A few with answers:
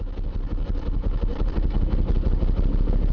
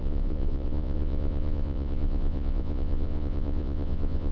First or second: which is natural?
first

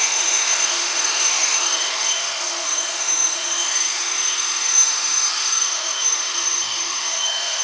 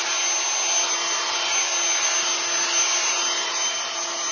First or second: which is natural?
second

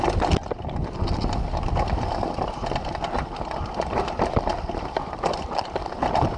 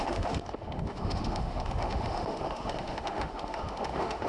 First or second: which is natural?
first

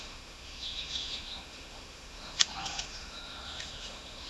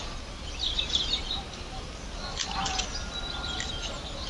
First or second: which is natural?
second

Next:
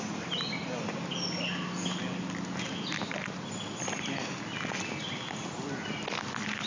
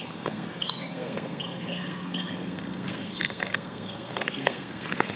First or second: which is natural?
first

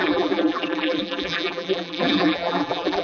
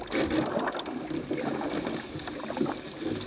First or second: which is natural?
second